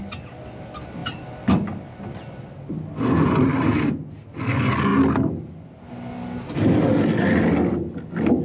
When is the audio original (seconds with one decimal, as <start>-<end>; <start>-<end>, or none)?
0.0-8.4

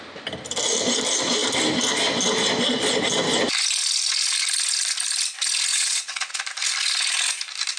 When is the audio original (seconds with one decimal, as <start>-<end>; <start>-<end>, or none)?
0.0-5.7; 6.4-7.8

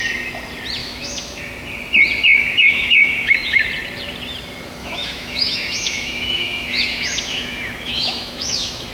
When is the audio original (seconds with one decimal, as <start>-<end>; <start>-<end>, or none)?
0.0-0.8; 1.4-2.4; 3.6-4.8

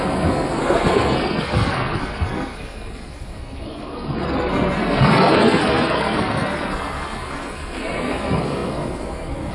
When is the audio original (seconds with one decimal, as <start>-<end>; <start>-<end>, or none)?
none

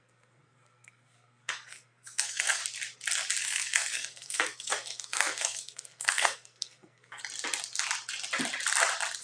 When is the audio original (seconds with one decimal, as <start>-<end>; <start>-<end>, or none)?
2.6-3.4; 7.2-9.2

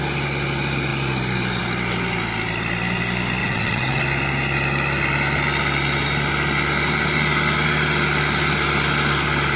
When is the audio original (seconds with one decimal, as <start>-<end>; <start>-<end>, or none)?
0.0-3.4; 4.0-9.6

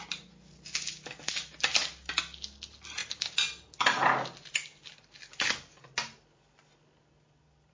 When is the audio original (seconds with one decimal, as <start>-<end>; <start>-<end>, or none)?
0.0-7.7

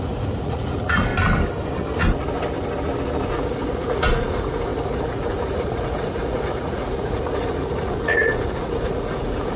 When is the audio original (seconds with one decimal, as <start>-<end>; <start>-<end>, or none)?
1.1-3.3